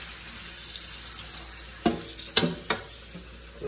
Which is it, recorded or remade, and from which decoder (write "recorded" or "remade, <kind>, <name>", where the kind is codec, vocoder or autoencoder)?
recorded